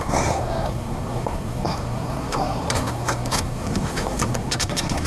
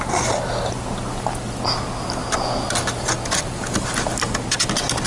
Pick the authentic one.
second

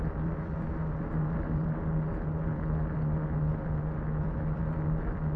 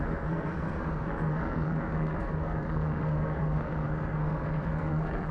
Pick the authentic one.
first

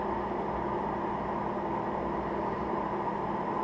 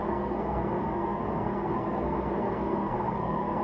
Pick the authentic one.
first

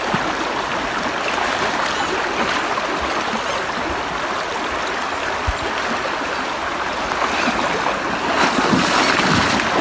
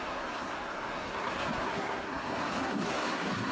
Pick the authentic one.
first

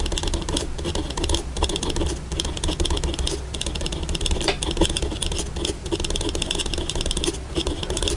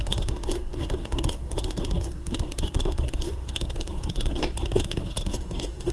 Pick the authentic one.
first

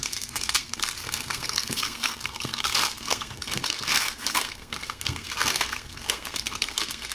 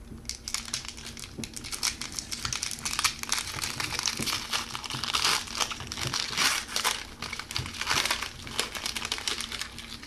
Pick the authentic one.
second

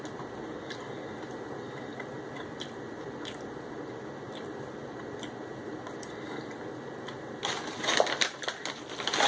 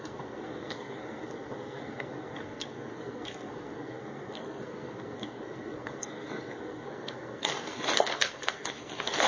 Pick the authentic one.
first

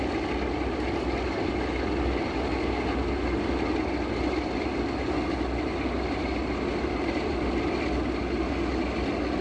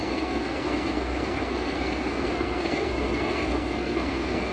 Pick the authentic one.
first